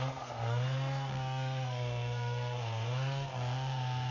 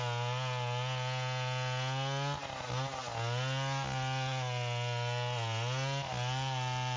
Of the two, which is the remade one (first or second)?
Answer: first